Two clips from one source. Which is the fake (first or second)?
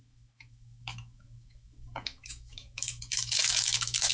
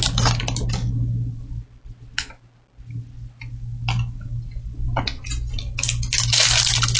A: first